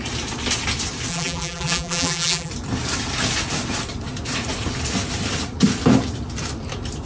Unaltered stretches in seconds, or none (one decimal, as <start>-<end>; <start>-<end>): 0.0-1.1; 2.5-7.1